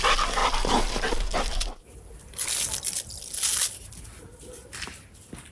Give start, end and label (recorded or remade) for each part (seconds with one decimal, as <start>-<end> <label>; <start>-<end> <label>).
0.0-5.5 recorded